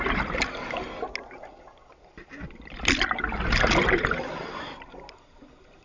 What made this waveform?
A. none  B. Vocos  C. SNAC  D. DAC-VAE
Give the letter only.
A